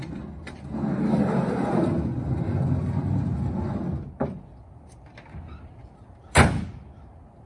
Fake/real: real